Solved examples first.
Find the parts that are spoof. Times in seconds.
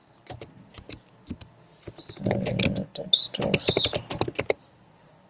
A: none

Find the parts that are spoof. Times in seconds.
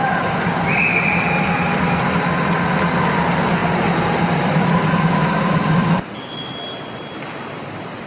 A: 3.6-4.7 (vocoder, BigVGAN v2)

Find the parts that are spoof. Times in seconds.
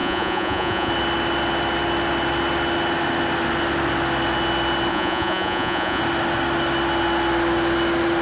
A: 0.0-0.9 (vocoder, Vocos); 4.9-6.0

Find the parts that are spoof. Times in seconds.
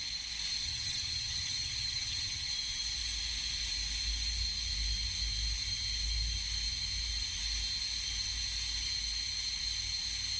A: 0.6-2.5 (vocoder, HiFi-GAN)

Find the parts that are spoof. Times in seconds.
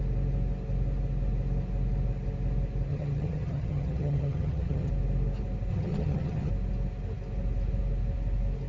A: 2.9-4.9 (vocoder, HiFi-GAN); 5.7-6.5